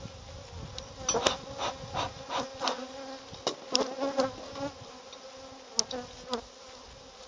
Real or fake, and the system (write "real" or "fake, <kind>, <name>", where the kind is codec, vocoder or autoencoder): real